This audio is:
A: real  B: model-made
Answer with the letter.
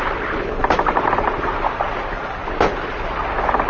A